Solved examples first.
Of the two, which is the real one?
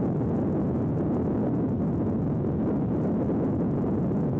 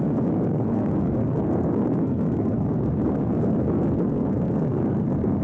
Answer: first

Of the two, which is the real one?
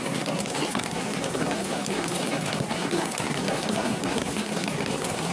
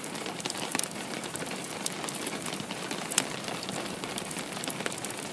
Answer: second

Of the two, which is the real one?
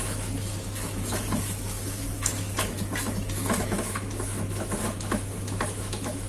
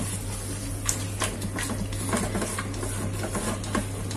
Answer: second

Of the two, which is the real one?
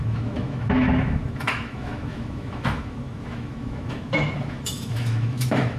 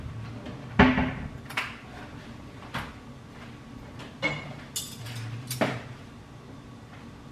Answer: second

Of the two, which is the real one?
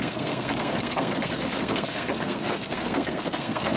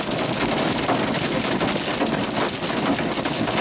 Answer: second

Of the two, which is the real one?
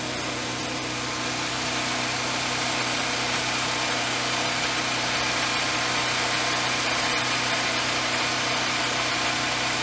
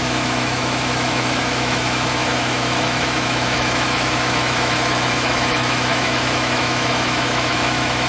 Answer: first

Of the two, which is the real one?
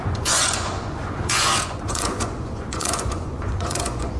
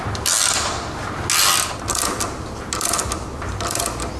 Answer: second